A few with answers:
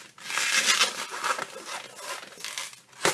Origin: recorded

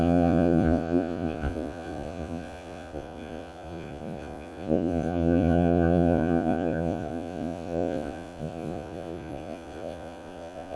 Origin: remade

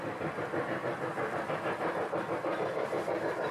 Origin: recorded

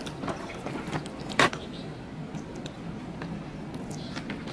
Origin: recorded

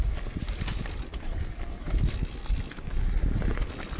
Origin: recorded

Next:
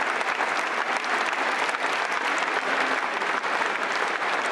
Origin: recorded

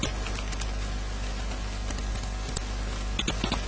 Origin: recorded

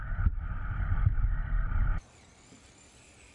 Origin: recorded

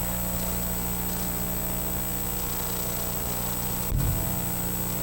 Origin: recorded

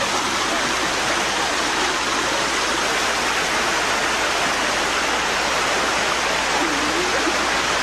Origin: recorded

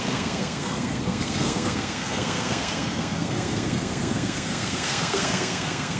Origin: remade